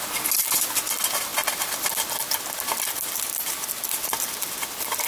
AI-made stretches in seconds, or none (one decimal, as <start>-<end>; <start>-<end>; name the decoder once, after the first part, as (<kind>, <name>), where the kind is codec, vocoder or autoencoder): none